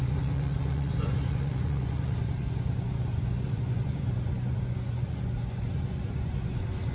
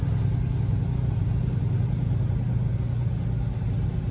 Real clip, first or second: second